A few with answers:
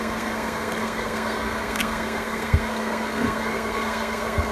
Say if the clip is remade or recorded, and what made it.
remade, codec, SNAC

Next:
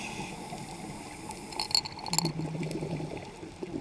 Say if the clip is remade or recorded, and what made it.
recorded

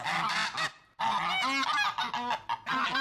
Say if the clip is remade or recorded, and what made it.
recorded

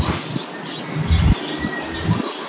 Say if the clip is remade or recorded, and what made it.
recorded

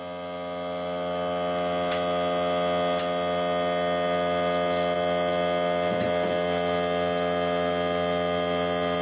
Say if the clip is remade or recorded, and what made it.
recorded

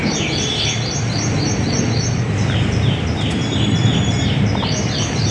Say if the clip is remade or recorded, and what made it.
recorded